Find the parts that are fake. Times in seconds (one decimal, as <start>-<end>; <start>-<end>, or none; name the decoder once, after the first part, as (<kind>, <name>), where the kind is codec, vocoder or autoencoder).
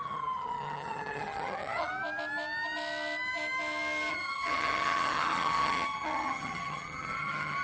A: 0.0-1.9 (vocoder, HiFi-GAN); 4.1-7.6